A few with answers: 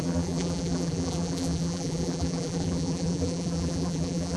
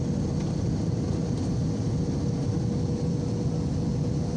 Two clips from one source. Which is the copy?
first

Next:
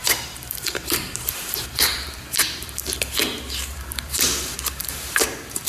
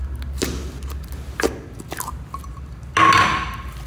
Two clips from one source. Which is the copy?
first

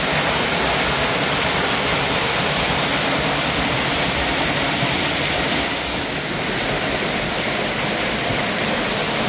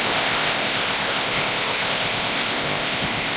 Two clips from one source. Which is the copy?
second